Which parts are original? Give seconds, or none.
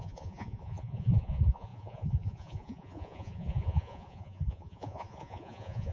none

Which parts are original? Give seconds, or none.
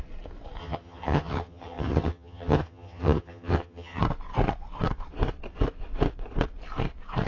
0.0-0.6; 4.0-7.3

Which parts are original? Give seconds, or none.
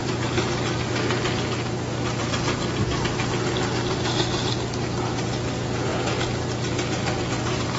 0.0-7.8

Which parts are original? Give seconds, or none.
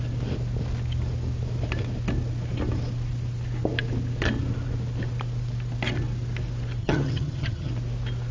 0.0-6.8; 7.7-8.3